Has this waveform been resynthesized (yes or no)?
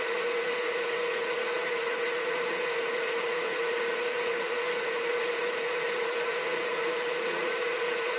yes